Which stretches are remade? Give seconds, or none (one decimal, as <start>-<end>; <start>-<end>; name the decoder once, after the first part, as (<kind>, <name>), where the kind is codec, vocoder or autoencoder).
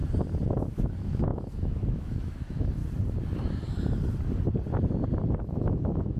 0.6-2.8 (autoencoder, DAC-VAE); 5.4-6.2